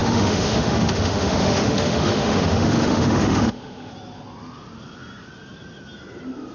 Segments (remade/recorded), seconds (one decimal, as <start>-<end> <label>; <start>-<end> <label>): 0.0-3.9 remade; 3.9-6.5 recorded